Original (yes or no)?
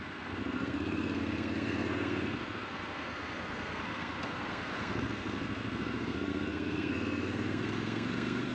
no